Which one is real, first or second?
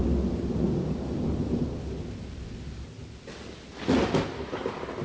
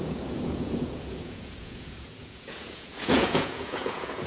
first